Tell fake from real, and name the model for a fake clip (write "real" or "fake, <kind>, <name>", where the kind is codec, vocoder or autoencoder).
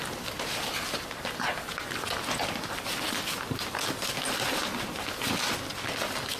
real